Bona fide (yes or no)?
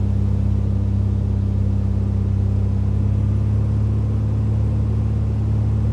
yes